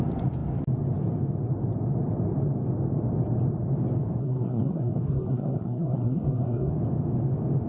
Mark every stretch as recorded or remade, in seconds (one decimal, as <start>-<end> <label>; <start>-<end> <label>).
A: 0.0-4.2 recorded; 4.2-6.7 remade; 6.7-7.7 recorded